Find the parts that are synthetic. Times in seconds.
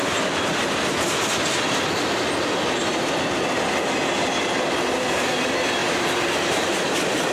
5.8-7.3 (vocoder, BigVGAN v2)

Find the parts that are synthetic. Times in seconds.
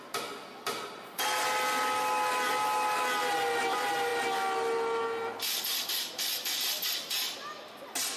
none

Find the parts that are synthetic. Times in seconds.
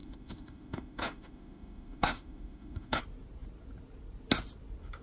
0.0-3.0 (autoencoder, DAC-VAE)